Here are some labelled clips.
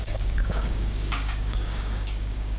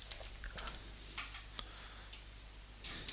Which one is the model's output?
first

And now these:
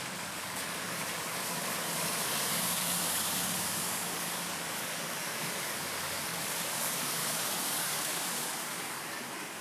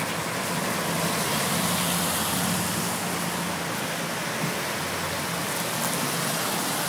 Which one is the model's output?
first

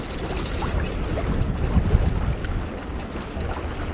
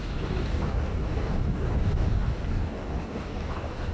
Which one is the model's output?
second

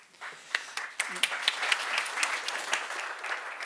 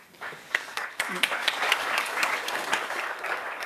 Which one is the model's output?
second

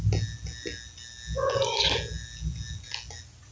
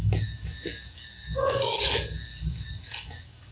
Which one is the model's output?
second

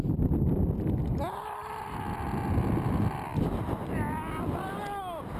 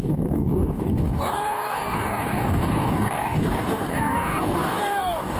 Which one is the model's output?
second